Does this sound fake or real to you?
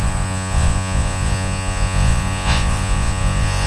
fake